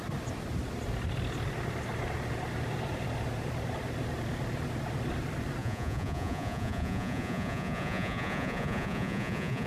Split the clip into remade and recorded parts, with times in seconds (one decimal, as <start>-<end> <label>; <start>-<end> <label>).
0.0-5.6 recorded; 5.6-9.7 remade